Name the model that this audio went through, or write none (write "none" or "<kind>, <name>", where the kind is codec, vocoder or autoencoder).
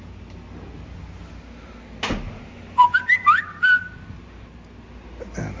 none